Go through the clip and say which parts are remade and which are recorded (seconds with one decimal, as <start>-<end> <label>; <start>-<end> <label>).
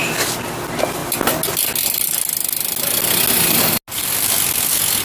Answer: 0.0-5.0 recorded